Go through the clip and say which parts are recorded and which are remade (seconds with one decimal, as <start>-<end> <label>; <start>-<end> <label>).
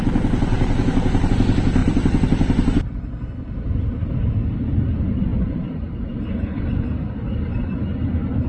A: 0.0-0.5 recorded; 0.5-1.3 remade; 1.3-8.5 recorded